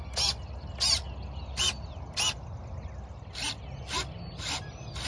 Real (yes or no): yes